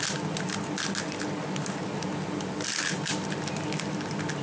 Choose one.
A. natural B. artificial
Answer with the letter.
A